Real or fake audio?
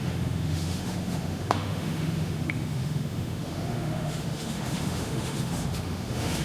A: fake